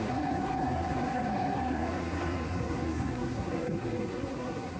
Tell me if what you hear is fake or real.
fake